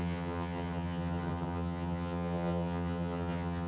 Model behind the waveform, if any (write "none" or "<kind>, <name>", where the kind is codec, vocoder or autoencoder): vocoder, HiFi-GAN